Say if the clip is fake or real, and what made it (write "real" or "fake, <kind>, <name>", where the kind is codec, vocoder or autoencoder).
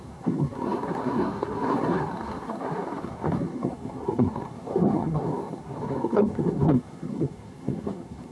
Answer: fake, codec, SNAC